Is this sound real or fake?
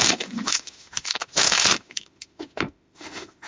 fake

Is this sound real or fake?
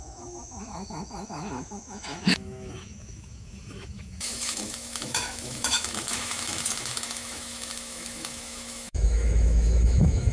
fake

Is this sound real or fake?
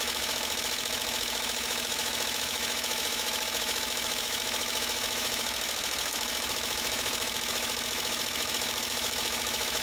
fake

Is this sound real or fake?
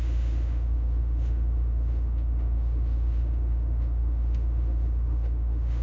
fake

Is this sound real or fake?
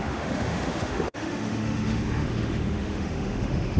fake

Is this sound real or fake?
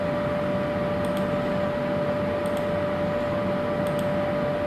real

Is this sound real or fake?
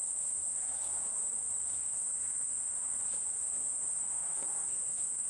fake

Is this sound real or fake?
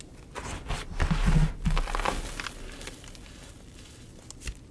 real